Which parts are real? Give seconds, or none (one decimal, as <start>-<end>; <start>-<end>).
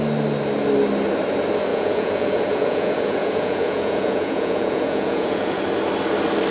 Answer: 0.0-1.7; 5.6-6.5